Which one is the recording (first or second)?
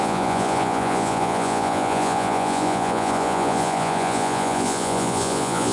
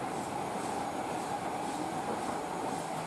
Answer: second